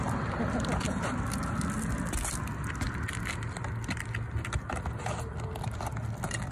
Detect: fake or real real